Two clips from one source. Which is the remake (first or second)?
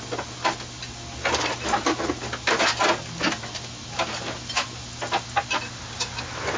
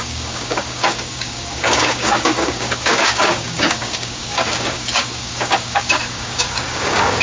second